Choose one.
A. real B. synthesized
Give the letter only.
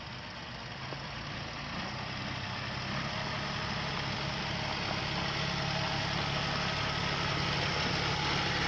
A